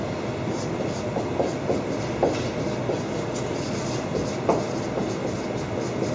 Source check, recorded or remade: recorded